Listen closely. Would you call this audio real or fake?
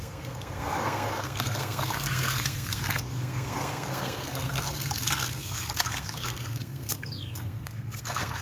fake